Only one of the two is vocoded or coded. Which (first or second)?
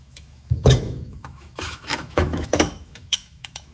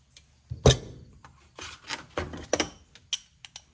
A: first